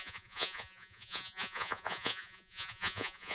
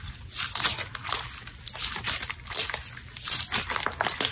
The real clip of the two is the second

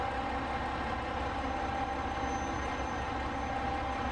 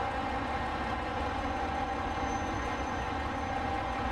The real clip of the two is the first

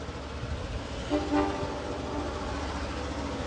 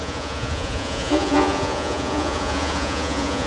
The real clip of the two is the first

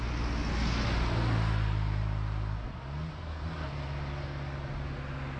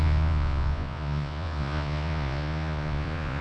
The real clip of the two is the first